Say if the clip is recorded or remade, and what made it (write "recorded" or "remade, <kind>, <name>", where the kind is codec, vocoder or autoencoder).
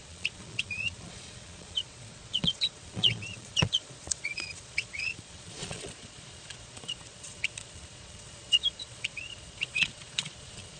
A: remade, vocoder, Vocos